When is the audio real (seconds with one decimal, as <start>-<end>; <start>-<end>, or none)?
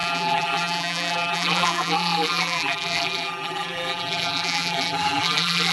none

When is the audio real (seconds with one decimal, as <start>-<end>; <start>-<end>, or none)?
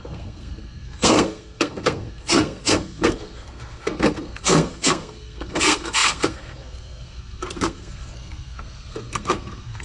none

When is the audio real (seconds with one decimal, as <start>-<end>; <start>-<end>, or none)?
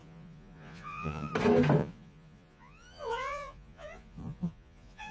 1.3-1.8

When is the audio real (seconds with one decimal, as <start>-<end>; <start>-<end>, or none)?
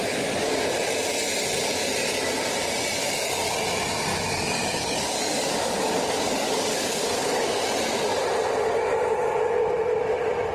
0.5-3.0; 3.5-4.1; 7.6-10.5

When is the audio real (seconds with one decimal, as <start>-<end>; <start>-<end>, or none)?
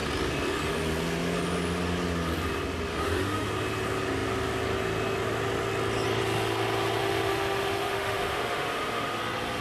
0.0-2.9; 3.5-7.0; 9.2-9.6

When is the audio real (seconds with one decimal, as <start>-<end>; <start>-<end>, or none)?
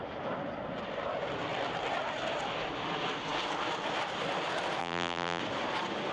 0.0-4.8; 5.4-6.1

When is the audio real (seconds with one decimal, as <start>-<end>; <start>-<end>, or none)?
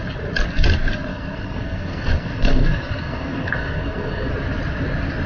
0.0-1.1; 4.3-5.3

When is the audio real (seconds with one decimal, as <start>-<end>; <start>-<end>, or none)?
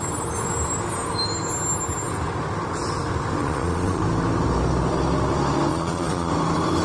0.0-3.4; 4.0-5.7; 6.3-6.8